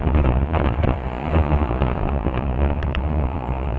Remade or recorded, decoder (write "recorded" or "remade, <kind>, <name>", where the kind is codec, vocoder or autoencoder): remade, vocoder, Vocos